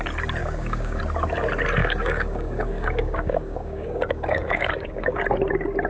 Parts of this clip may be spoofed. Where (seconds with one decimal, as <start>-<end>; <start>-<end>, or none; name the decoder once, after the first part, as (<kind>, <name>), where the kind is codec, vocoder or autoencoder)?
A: 0.4-1.0 (codec, DAC); 1.8-5.2